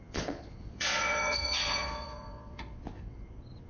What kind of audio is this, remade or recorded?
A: remade